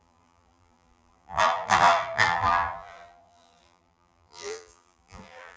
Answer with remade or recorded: remade